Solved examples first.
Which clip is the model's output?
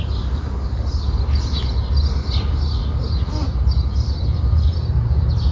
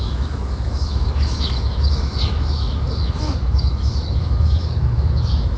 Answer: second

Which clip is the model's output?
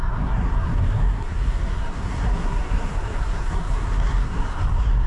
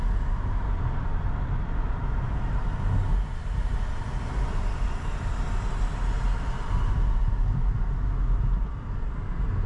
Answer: first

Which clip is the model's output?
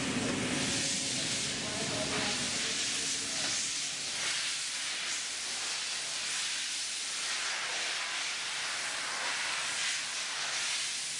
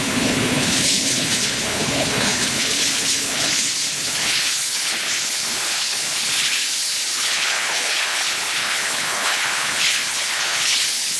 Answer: second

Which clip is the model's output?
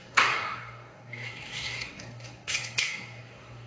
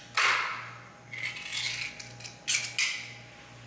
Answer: first